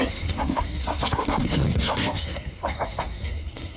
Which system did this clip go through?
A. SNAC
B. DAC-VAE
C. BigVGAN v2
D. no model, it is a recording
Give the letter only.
A